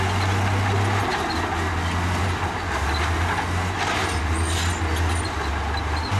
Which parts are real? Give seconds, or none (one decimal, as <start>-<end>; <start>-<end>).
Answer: 0.0-6.2